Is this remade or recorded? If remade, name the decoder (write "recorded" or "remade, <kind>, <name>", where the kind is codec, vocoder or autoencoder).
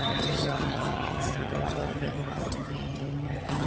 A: remade, vocoder, HiFi-GAN